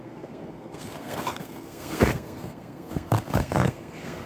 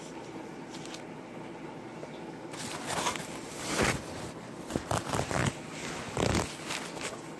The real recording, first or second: second